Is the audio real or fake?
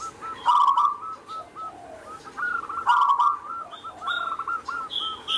real